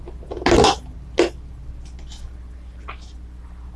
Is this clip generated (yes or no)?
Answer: no